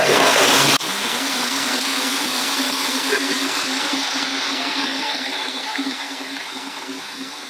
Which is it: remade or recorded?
remade